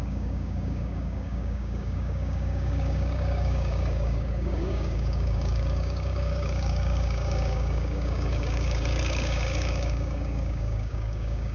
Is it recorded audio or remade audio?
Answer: remade